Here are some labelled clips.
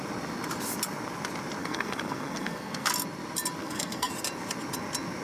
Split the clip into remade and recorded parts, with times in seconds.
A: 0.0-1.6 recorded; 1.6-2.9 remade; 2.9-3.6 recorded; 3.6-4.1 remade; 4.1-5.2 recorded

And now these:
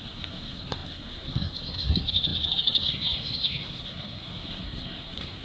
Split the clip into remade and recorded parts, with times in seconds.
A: 0.0-5.4 remade

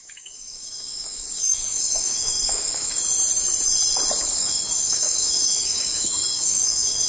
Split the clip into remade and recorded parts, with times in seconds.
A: 0.0-3.0 remade; 3.0-4.2 recorded; 4.2-7.1 remade

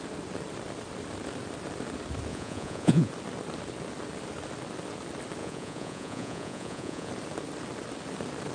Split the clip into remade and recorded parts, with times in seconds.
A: 0.0-2.3 recorded; 2.3-3.1 remade; 3.1-5.4 recorded; 5.4-7.1 remade; 7.1-8.5 recorded

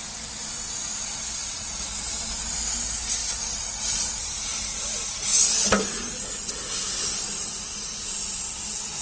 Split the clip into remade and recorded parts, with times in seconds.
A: 0.0-3.2 recorded; 3.2-4.1 remade; 4.1-4.5 recorded; 4.5-5.0 remade; 5.0-9.0 recorded